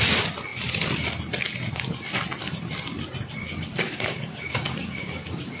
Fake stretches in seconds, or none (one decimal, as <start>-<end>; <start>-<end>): 3.4-5.6